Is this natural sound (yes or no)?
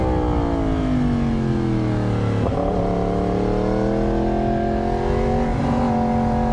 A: yes